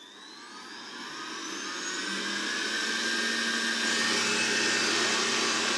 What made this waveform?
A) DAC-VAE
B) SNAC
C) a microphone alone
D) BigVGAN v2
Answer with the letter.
C